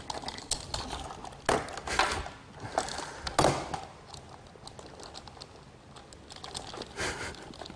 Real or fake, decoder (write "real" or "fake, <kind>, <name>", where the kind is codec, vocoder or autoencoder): real